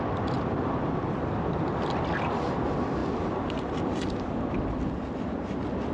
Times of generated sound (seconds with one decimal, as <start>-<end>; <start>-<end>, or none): none